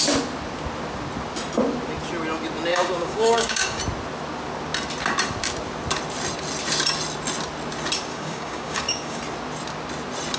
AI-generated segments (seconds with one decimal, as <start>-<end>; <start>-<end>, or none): 2.7-3.8; 8.1-9.2